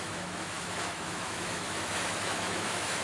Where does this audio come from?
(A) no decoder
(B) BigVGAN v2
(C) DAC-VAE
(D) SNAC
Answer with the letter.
C